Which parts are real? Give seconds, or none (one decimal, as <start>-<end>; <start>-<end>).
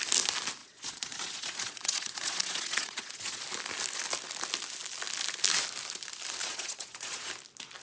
0.0-0.6; 3.4-6.4; 7.3-7.8